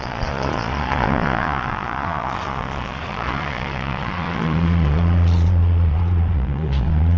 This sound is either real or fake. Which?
fake